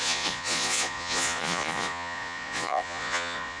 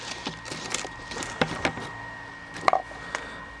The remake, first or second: first